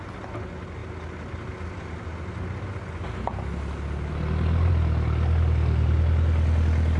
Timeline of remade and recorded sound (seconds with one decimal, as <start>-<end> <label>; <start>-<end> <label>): 0.0-7.0 recorded